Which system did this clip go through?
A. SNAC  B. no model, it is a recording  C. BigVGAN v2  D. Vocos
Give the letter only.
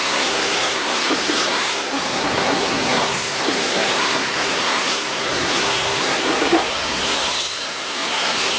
A